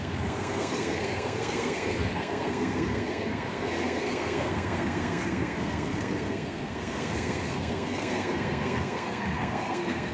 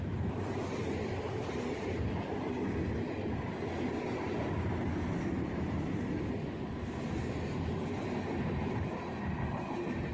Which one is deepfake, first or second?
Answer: first